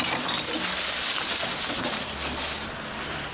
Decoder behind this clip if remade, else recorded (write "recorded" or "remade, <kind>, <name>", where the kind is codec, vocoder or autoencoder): recorded